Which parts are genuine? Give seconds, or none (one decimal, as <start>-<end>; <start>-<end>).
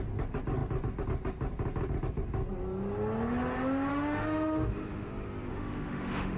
0.0-3.9; 5.1-5.5